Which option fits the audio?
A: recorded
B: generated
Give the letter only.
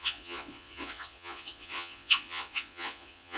B